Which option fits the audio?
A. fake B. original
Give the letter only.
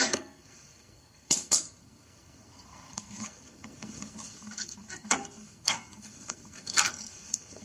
A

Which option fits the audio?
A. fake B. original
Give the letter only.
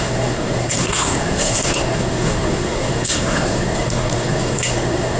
A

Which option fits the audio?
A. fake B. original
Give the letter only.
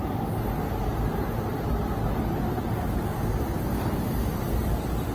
B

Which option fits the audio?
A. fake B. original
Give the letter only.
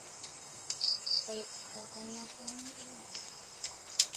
A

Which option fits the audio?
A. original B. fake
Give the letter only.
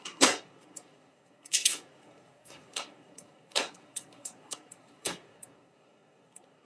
B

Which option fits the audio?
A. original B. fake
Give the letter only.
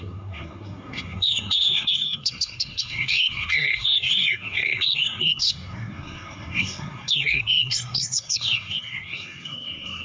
B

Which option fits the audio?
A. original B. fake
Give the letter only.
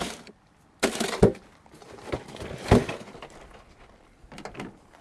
A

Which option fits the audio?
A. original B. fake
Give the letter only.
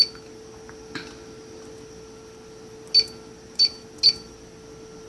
A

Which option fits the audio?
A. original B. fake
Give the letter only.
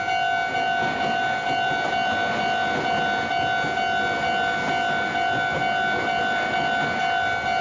A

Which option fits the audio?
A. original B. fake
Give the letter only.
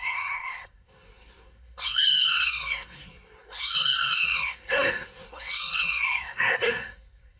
B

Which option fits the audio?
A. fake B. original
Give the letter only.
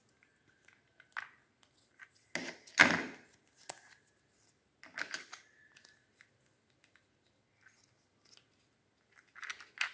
B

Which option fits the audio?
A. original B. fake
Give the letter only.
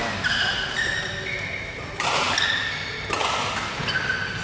A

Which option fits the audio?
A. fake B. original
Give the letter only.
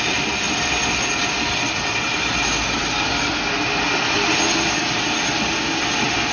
B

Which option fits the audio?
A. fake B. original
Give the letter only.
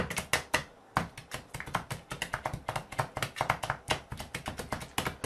B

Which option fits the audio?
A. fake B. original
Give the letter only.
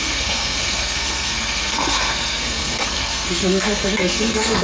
A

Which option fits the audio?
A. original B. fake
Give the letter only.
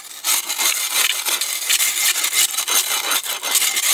A